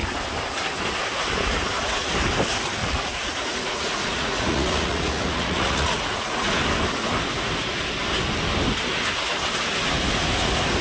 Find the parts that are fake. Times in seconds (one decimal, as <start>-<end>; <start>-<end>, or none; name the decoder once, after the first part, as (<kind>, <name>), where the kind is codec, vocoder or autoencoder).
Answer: 2.8-6.5 (vocoder, Vocos)